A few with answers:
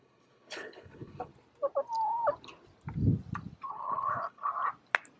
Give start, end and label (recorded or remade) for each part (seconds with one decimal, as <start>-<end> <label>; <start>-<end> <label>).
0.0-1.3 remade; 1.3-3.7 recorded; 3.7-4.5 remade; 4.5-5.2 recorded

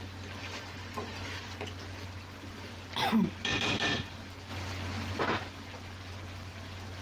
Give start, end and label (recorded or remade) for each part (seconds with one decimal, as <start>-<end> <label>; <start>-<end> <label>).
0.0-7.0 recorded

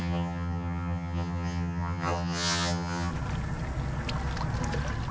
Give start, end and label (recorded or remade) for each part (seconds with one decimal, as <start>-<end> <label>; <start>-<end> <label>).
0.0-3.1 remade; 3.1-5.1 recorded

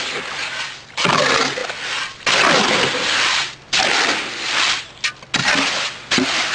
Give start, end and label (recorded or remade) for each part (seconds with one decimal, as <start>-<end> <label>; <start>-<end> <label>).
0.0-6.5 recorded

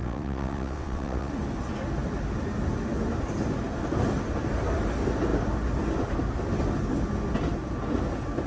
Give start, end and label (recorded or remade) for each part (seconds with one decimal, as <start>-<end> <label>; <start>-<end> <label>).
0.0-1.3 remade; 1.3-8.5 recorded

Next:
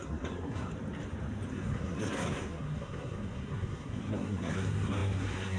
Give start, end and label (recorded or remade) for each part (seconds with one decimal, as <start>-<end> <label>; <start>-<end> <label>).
0.0-0.7 remade; 0.7-1.5 recorded; 1.5-5.6 remade